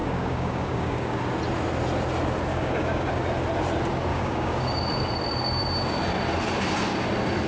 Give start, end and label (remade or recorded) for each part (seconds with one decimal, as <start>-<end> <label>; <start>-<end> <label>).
0.0-1.2 remade; 1.2-2.5 recorded; 2.5-3.1 remade; 3.1-4.1 recorded; 4.1-4.8 remade; 4.8-7.5 recorded